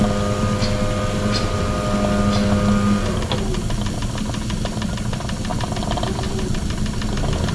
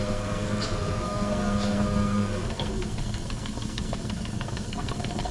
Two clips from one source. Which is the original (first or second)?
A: first